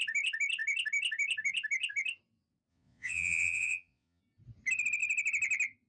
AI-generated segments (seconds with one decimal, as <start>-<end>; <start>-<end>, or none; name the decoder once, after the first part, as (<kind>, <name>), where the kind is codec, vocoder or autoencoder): 2.7-4.2 (vocoder, Vocos)